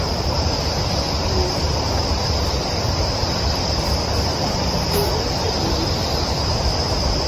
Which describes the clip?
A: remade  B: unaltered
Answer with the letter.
B